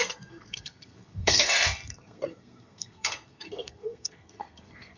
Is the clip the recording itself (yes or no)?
no